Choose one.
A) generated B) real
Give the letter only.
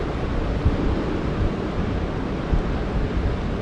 B